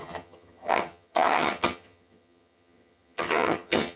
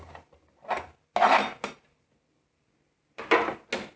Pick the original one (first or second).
second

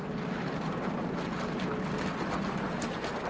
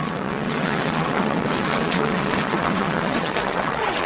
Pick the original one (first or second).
first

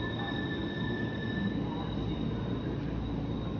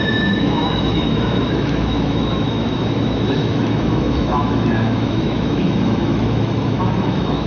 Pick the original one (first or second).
first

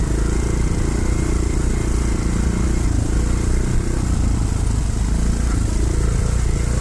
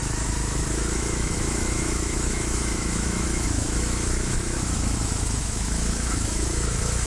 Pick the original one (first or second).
first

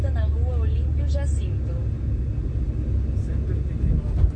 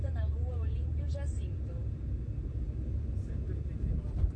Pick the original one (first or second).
first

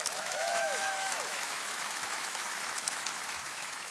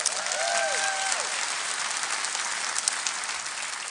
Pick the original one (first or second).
second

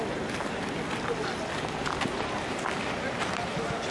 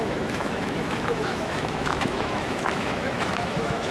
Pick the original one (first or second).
first